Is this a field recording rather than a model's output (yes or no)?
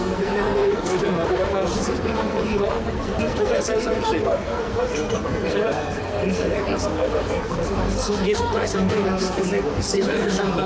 no